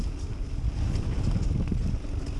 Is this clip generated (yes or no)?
no